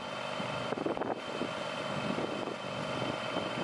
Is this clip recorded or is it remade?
recorded